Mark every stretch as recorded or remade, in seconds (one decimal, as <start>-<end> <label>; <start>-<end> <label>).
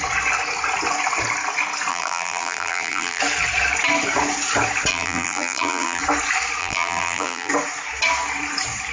0.0-1.9 recorded; 1.9-3.2 remade; 3.2-4.9 recorded; 4.9-6.0 remade; 6.0-6.6 recorded; 6.6-7.5 remade; 7.5-8.9 recorded